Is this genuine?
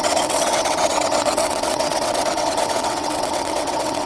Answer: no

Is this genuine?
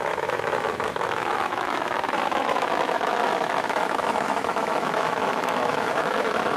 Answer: no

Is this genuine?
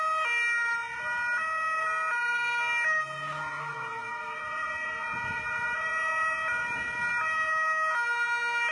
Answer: yes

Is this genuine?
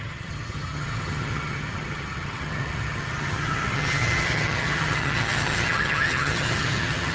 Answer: no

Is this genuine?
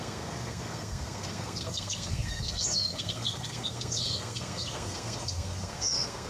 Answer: no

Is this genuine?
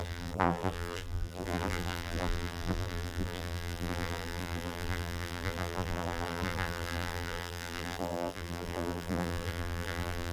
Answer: no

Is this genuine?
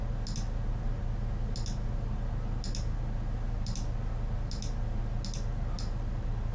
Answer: yes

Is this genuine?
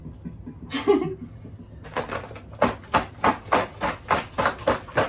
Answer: yes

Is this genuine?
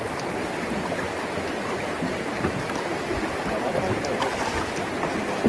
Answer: yes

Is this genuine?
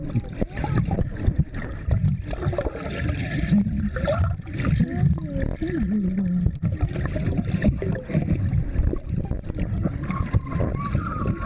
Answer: yes